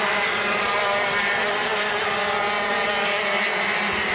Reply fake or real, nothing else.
real